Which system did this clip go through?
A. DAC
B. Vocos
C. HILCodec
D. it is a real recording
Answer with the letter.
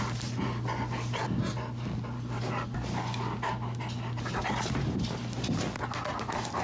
D